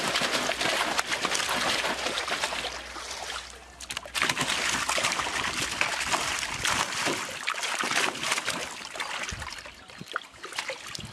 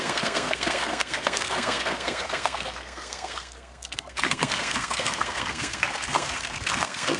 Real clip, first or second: first